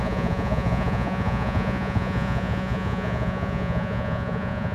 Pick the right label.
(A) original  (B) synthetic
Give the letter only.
B